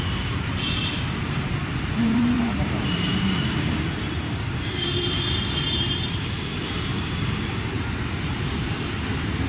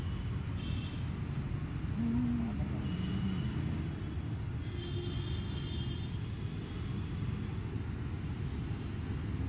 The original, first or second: second